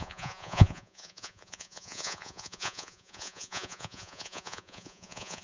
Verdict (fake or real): fake